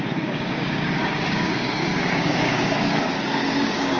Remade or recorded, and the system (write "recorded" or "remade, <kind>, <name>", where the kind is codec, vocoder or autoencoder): remade, codec, DAC